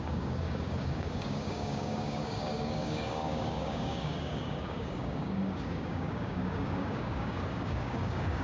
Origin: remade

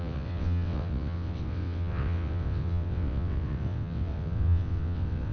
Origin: remade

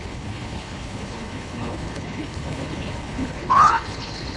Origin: remade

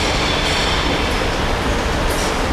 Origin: recorded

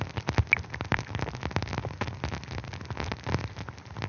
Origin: recorded